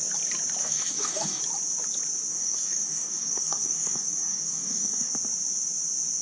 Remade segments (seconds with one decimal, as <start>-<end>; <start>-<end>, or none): 0.6-1.4; 2.3-5.1